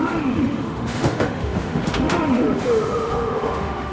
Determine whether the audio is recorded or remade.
remade